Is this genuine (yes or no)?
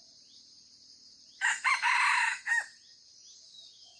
no